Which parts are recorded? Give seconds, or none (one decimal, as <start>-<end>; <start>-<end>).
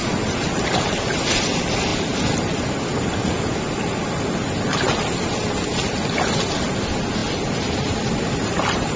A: 0.0-9.0